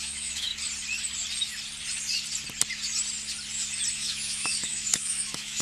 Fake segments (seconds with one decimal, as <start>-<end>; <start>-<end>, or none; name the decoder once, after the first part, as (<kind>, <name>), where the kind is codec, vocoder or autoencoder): 0.0-0.5 (autoencoder, DAC-VAE); 3.9-5.6